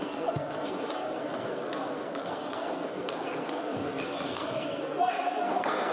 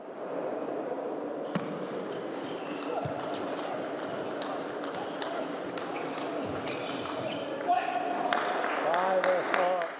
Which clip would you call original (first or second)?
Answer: second